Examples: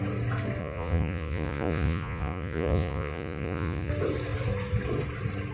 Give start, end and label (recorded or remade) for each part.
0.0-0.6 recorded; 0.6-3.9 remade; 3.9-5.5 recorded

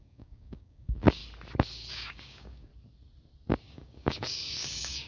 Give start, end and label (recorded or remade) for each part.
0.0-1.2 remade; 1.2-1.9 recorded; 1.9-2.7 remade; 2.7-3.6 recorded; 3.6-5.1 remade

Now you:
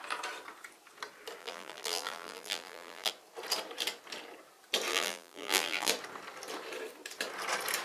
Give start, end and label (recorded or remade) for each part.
0.0-1.4 recorded; 1.4-3.1 remade; 3.1-4.9 recorded; 4.9-5.9 remade; 5.9-7.8 recorded

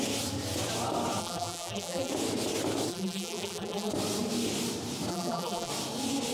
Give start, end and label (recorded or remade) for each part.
0.0-1.2 recorded; 1.2-2.1 remade; 2.1-2.9 recorded; 2.9-3.9 remade; 3.9-5.1 recorded; 5.1-5.7 remade; 5.7-6.3 recorded

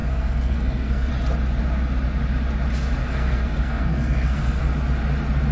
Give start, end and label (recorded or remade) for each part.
0.0-1.1 remade; 1.1-3.0 recorded; 3.0-4.6 remade; 4.6-5.5 recorded

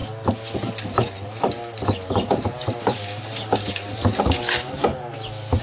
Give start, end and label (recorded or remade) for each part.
0.0-2.8 recorded; 2.8-3.6 remade; 3.6-4.2 recorded; 4.2-4.9 remade; 4.9-5.6 recorded

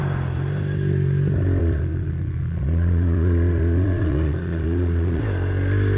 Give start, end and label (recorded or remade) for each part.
0.0-1.6 recorded; 1.6-5.2 remade; 5.2-6.0 recorded

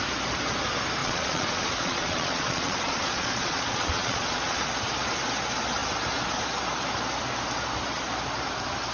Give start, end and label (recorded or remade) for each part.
0.0-1.0 recorded; 1.0-4.6 remade; 4.6-8.9 recorded